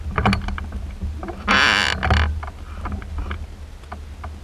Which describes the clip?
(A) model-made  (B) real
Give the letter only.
B